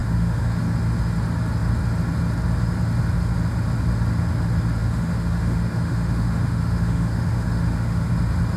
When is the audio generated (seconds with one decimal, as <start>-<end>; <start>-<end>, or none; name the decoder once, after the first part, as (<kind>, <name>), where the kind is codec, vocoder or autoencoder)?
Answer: 0.0-0.6 (autoencoder, DAC-VAE); 4.8-8.1